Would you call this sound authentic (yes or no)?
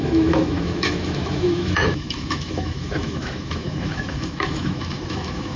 no